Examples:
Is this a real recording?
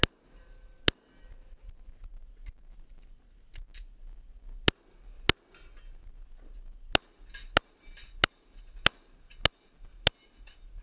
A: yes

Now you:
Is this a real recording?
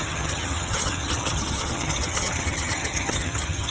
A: no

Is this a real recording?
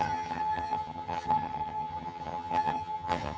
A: no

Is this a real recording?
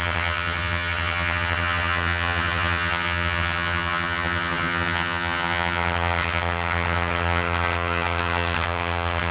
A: no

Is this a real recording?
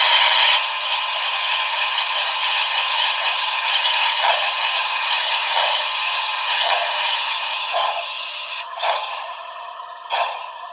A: no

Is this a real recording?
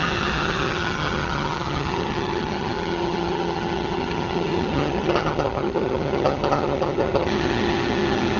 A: no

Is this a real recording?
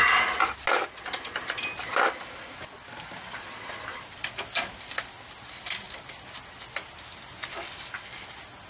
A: yes